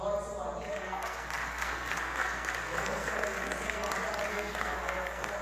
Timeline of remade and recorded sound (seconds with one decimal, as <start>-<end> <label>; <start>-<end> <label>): 0.0-0.7 recorded; 0.7-3.9 remade; 3.9-4.3 recorded; 4.3-5.4 remade